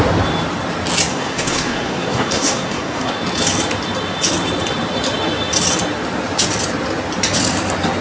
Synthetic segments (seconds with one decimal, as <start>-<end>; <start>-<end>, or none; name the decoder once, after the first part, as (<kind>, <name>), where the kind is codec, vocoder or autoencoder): 1.1-3.1 (codec, SNAC)